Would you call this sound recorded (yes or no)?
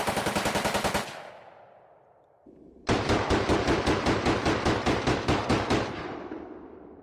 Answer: no